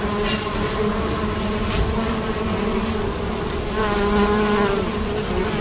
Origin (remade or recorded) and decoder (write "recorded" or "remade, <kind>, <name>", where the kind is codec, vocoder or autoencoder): recorded